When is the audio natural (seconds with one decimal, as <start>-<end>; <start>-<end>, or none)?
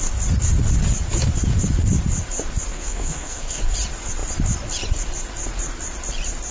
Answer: 0.0-2.7; 3.6-6.5